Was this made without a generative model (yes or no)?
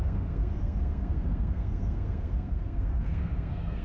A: no